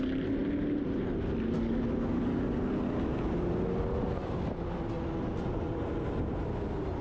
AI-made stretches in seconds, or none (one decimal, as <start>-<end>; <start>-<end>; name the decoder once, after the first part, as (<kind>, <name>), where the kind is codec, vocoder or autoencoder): none